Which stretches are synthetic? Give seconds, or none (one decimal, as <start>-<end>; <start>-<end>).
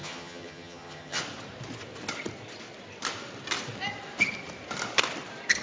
0.0-1.2